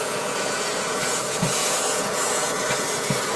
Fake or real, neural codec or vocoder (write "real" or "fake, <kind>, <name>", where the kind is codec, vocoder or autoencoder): fake, vocoder, Vocos